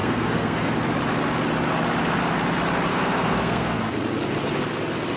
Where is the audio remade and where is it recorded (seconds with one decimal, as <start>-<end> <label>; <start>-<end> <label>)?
0.0-0.7 remade; 0.7-2.9 recorded; 2.9-3.8 remade; 3.8-5.2 recorded